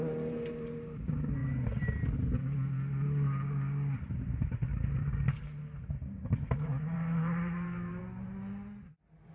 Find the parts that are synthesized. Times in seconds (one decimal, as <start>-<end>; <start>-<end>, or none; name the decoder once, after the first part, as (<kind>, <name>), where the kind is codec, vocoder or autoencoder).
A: 6.7-8.0 (vocoder, BigVGAN v2)